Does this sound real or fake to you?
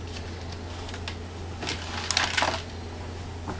real